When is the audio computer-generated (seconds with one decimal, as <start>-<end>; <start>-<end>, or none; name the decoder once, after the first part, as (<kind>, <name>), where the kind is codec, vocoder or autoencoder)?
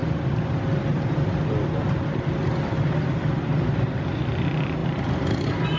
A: 0.0-3.5 (vocoder, BigVGAN v2); 4.8-5.8